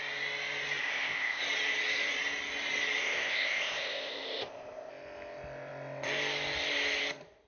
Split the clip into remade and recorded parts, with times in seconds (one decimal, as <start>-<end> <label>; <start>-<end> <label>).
0.0-0.8 recorded; 0.8-1.4 remade; 1.4-3.0 recorded; 3.0-4.9 remade; 4.9-7.5 recorded